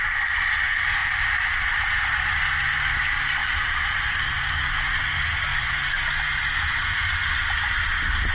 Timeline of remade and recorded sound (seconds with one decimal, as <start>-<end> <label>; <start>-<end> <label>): 0.0-1.0 recorded; 1.0-2.1 remade; 2.1-3.4 recorded; 3.4-4.3 remade; 4.3-5.5 recorded; 5.5-6.7 remade; 6.7-8.3 recorded